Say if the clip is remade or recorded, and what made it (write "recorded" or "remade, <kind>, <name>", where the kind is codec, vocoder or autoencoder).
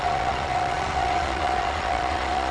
remade, vocoder, Vocos